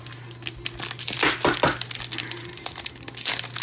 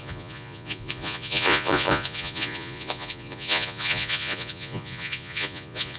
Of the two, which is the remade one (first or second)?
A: second